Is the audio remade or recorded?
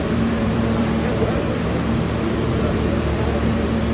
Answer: remade